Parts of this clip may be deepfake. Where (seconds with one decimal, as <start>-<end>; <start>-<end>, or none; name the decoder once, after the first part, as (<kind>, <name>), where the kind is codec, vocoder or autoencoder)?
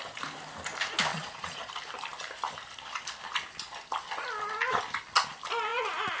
1.1-1.7 (vocoder, Vocos)